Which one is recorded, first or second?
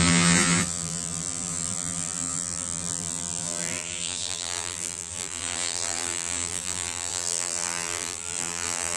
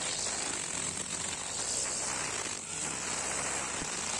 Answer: second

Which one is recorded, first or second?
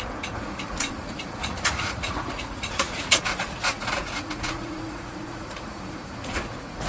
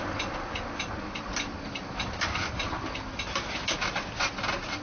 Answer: second